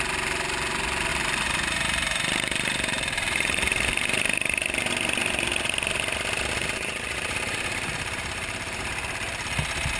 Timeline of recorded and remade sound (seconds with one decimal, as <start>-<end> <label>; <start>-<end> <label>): 0.0-1.1 recorded; 1.1-4.9 remade; 4.9-6.6 recorded; 6.6-8.9 remade; 8.9-10.0 recorded